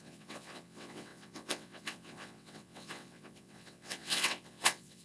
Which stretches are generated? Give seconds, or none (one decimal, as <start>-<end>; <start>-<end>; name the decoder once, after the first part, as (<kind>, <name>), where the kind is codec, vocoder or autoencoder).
0.0-5.0 (vocoder, WaveNeXt)